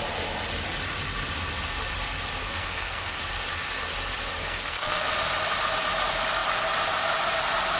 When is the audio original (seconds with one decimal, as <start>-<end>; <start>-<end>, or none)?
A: 0.0-2.4; 3.2-4.4; 5.1-7.8